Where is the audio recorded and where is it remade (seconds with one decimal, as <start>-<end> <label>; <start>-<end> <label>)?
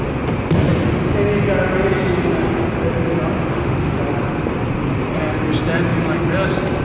0.0-3.5 recorded; 3.5-4.0 remade; 4.0-6.8 recorded